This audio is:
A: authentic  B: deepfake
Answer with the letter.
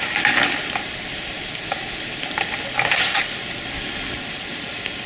A